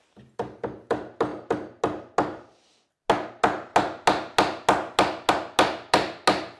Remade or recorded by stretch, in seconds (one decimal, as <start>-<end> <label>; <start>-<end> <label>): 0.0-6.6 recorded